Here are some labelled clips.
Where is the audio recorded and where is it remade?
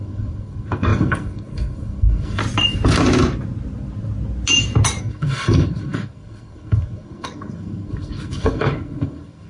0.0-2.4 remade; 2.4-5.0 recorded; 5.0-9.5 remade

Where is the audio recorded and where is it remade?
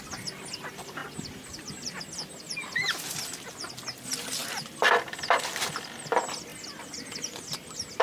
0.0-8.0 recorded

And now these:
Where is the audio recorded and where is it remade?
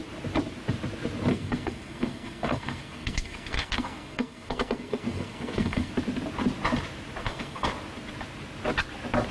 0.0-1.3 recorded; 1.3-5.9 remade; 5.9-7.2 recorded; 7.2-7.7 remade; 7.7-9.3 recorded